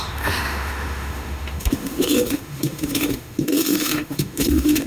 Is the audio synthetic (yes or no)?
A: yes